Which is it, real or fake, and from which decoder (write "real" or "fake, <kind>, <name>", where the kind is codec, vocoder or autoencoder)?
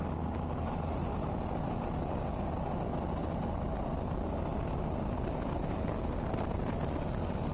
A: real